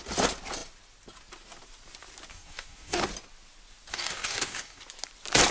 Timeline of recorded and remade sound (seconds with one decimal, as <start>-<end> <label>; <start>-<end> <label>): 0.0-2.3 recorded; 2.3-3.0 remade; 3.0-3.9 recorded; 3.9-4.8 remade; 4.8-5.5 recorded